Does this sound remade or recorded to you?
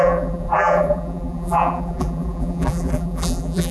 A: remade